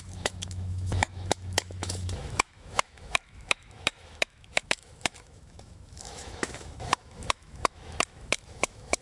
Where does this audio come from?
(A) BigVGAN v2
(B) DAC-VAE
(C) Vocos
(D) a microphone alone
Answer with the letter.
B